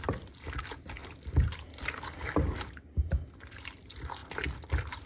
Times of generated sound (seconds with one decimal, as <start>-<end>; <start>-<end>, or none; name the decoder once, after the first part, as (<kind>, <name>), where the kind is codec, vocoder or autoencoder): 0.0-5.1 (vocoder, BigVGAN v2)